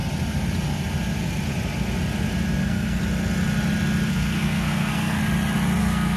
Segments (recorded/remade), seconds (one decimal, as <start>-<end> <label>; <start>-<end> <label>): 0.0-2.6 recorded; 2.6-3.0 remade; 3.0-4.1 recorded; 4.1-5.2 remade; 5.2-5.8 recorded; 5.8-6.2 remade